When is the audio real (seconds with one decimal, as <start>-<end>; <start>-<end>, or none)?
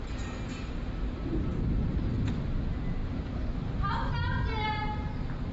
0.0-5.5